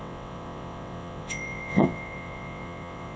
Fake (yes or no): yes